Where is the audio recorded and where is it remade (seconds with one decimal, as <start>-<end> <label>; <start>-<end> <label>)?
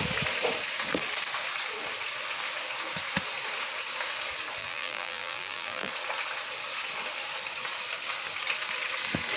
0.0-4.6 recorded; 4.6-5.9 remade; 5.9-9.4 recorded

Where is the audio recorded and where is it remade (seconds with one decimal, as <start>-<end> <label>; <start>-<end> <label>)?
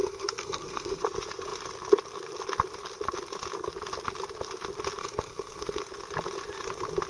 0.0-1.0 remade; 1.0-5.0 recorded; 5.0-5.8 remade; 5.8-7.1 recorded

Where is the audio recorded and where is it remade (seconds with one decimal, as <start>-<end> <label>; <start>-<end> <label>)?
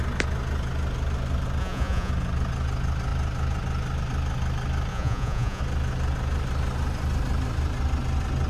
0.0-1.6 recorded; 1.6-2.1 remade; 2.1-4.9 recorded; 4.9-5.6 remade; 5.6-8.5 recorded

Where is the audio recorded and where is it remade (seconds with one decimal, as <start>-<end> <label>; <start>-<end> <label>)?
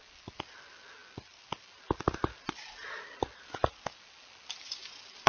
0.0-5.3 recorded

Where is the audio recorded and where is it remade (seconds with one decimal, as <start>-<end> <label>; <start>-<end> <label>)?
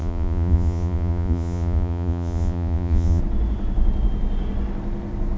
0.0-3.2 remade; 3.2-5.4 recorded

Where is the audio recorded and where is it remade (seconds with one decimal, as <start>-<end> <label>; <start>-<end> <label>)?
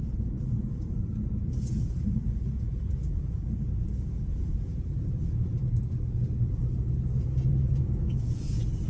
0.0-5.5 remade; 5.5-7.5 recorded; 7.5-8.9 remade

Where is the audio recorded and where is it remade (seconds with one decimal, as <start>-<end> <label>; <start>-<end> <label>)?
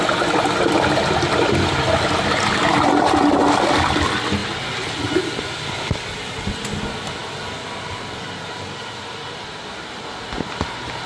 0.0-11.1 recorded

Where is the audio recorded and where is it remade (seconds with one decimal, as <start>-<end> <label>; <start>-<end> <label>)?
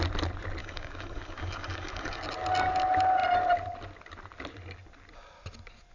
0.0-0.6 recorded; 0.6-2.2 remade; 2.2-5.9 recorded